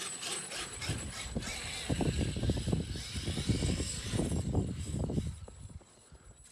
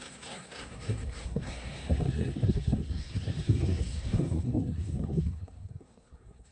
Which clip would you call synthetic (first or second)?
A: second